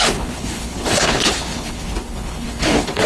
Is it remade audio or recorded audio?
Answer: remade